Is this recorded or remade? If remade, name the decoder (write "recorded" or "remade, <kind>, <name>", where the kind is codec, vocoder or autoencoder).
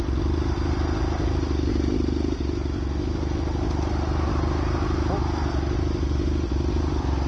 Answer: recorded